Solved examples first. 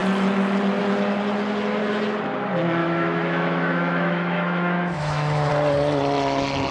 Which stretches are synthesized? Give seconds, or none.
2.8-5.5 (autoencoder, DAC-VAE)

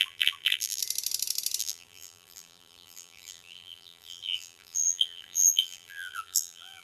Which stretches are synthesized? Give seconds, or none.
0.0-0.8 (vocoder, BigVGAN v2); 1.6-6.8

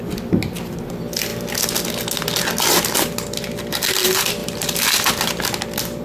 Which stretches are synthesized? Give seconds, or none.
4.4-5.1 (vocoder, BigVGAN v2)

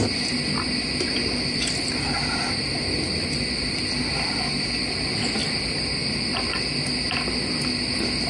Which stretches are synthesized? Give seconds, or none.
none

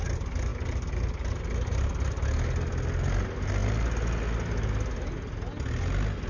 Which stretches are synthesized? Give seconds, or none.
none

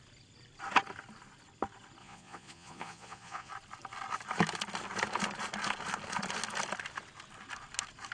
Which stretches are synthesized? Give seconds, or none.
2.0-3.5 (vocoder, Vocos)

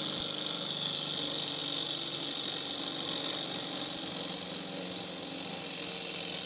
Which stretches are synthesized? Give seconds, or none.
none